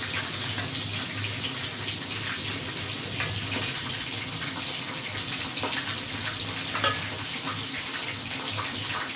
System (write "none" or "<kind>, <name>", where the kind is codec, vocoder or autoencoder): none